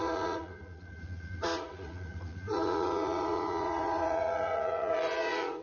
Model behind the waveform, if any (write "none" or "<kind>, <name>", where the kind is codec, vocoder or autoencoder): vocoder, Vocos